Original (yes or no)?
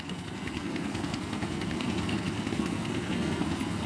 no